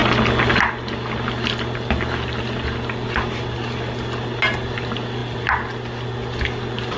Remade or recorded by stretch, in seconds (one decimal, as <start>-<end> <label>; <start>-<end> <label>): 0.0-7.0 recorded